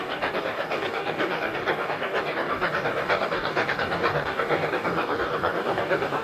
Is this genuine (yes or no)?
no